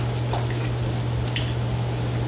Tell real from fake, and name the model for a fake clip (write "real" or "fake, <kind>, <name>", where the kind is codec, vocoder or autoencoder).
real